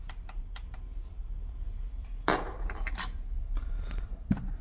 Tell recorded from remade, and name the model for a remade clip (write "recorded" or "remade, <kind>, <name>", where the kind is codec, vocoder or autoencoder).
remade, vocoder, BigVGAN v2